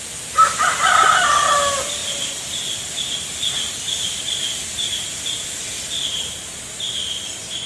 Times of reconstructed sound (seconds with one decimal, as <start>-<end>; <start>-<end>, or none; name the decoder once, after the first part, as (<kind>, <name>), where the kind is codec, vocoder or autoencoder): none